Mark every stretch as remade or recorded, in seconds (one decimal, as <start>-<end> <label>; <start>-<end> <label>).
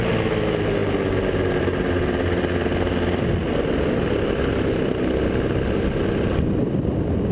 0.0-7.3 recorded